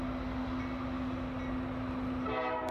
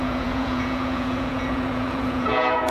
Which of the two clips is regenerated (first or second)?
second